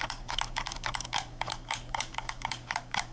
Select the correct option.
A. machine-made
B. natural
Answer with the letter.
A